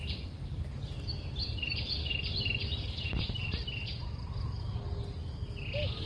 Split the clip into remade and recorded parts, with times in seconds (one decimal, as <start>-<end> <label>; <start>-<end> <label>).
0.0-6.1 recorded